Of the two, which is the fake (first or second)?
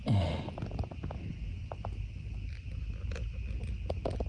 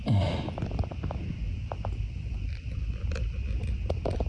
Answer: second